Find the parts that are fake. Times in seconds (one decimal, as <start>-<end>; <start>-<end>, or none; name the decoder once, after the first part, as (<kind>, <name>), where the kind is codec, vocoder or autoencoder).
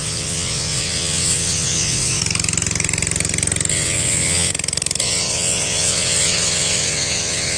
0.0-2.2 (vocoder, WaveNeXt); 3.7-4.5; 5.0-7.6